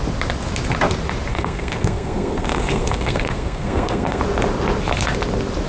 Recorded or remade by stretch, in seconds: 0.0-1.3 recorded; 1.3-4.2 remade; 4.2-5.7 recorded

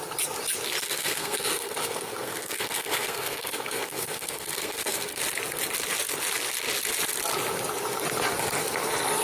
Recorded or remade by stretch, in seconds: 0.0-0.8 recorded; 0.8-5.2 remade; 5.2-9.2 recorded